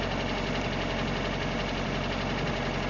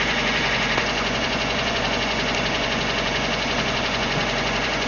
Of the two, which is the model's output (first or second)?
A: second